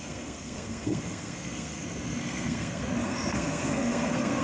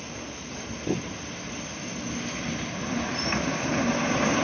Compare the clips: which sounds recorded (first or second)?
second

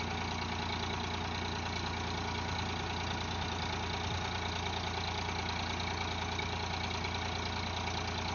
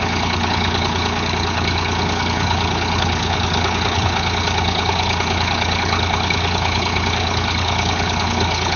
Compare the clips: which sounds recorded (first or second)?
first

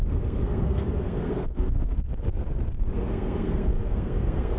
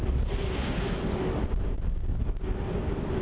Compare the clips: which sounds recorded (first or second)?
second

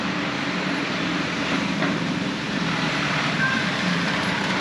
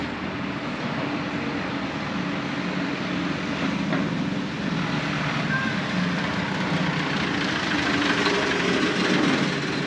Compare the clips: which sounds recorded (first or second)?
second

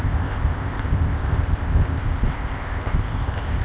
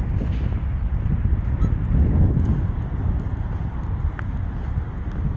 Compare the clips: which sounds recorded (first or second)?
second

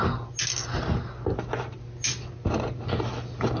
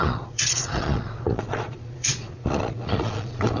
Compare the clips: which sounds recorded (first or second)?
first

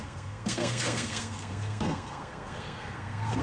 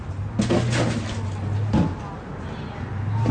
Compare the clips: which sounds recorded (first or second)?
second